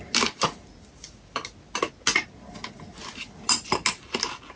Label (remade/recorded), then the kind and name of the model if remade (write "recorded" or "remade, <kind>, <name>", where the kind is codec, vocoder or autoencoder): recorded